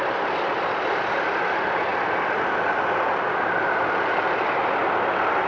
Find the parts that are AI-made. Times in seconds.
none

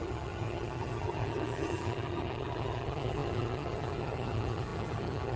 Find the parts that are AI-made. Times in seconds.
0.0-5.4 (vocoder, HiFi-GAN)

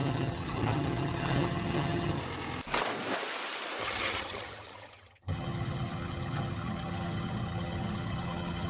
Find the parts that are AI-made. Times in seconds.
0.0-2.2 (vocoder, HiFi-GAN); 3.8-8.7

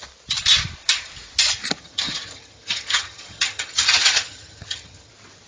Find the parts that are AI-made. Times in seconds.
1.8-5.1 (vocoder, HiFi-GAN)

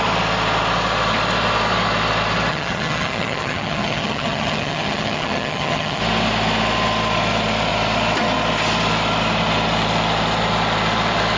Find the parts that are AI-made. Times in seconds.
2.5-6.0 (vocoder, HiFi-GAN)

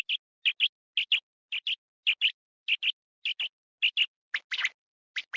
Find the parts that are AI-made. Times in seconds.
none